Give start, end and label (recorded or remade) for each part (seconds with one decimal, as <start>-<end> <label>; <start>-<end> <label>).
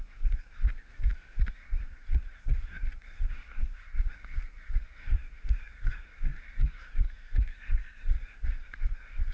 0.0-0.9 remade; 0.9-1.5 recorded; 1.5-9.3 remade